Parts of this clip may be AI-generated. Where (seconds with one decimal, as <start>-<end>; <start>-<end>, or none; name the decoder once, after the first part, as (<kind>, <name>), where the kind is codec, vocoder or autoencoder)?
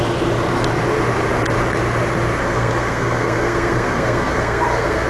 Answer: 2.4-5.1 (codec, SNAC)